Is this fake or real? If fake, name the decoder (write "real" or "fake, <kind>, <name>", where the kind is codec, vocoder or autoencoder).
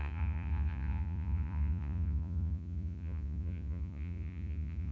fake, vocoder, Vocos